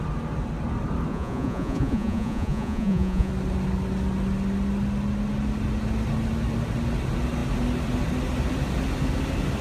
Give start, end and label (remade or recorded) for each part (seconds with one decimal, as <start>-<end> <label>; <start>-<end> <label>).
0.0-1.1 recorded; 1.1-3.3 remade; 3.3-9.6 recorded